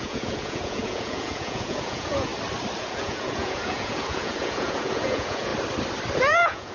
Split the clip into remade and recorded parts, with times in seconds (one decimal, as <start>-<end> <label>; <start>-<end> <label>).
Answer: 0.0-2.3 remade; 2.3-2.8 recorded; 2.8-5.5 remade; 5.5-6.2 recorded; 6.2-6.7 remade